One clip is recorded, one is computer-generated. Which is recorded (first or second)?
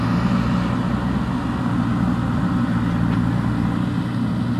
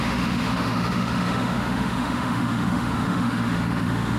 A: first